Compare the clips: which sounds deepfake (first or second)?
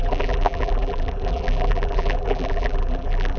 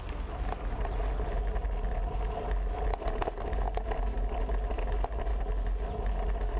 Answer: first